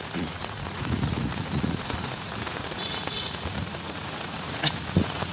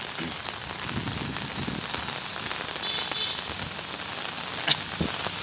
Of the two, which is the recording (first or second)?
second